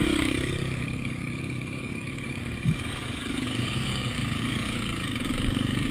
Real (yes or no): no